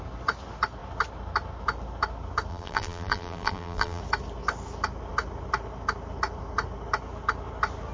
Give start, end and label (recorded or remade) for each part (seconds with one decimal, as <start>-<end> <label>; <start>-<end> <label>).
0.0-2.5 recorded; 2.5-4.0 remade; 4.0-7.9 recorded